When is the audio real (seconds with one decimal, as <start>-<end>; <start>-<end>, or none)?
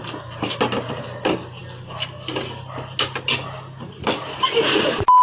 0.0-5.2